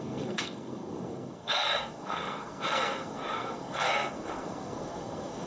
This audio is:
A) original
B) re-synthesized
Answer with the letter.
B